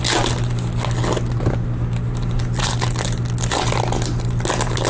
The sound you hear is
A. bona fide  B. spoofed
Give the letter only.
A